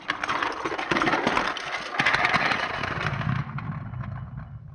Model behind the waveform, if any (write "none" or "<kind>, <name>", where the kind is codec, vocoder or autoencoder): none